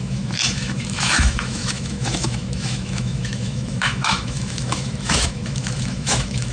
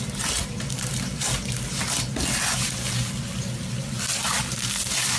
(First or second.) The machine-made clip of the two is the first